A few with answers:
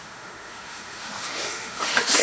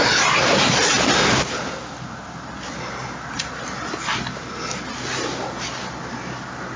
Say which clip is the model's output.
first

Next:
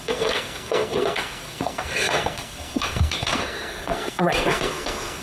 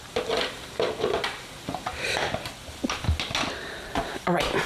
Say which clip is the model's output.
first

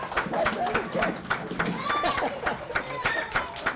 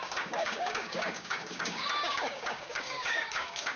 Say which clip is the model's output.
second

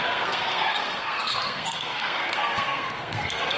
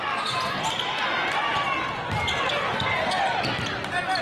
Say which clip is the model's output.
first